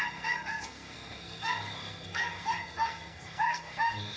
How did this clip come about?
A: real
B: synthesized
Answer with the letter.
B